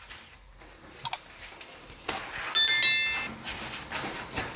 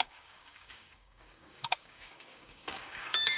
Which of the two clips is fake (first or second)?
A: second